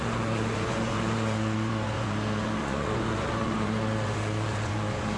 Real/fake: fake